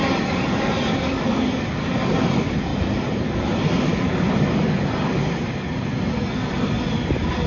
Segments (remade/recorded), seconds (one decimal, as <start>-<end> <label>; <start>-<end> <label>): 0.0-7.5 recorded